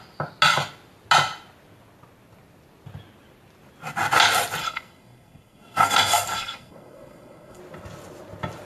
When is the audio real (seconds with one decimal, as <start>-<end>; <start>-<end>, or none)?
0.0-4.6; 7.6-8.7